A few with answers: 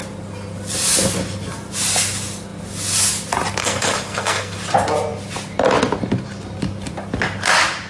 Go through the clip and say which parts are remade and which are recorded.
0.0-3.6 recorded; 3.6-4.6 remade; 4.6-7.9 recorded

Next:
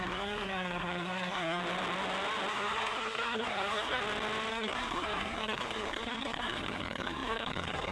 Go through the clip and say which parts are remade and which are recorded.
0.0-1.6 remade; 1.6-2.5 recorded; 2.5-4.0 remade; 4.0-4.5 recorded; 4.5-7.9 remade

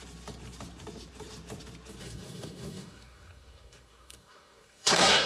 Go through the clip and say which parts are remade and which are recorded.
0.0-2.0 recorded; 2.0-5.3 remade

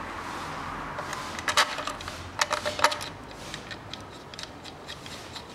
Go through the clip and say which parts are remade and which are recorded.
0.0-5.5 recorded

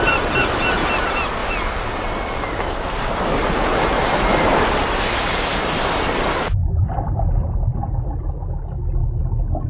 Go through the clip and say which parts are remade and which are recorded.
0.0-9.7 recorded

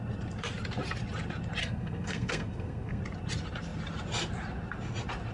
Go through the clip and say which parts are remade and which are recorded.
0.0-1.6 recorded; 1.6-3.0 remade; 3.0-5.3 recorded